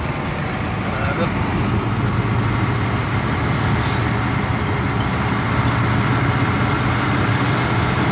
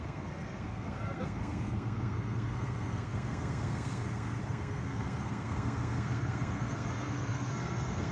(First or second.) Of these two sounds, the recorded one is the first